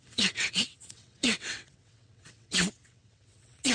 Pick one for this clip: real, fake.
fake